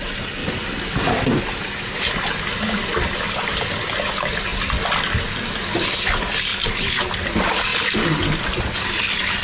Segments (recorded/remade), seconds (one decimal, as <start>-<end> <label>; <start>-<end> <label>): 0.0-4.5 remade; 4.5-5.2 recorded; 5.2-7.7 remade; 7.7-8.6 recorded; 8.6-9.4 remade